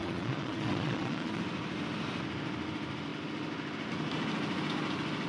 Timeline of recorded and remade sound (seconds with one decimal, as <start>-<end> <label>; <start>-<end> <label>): 0.0-1.4 remade; 1.4-5.3 recorded